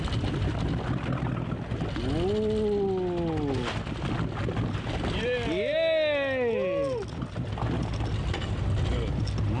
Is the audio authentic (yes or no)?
yes